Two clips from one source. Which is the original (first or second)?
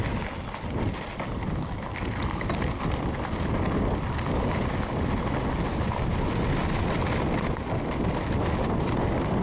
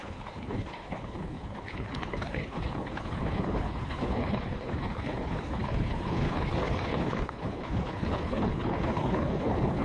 first